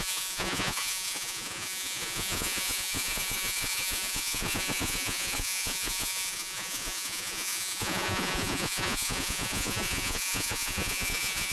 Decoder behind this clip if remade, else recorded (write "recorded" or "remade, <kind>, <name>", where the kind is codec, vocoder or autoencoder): remade, vocoder, Vocos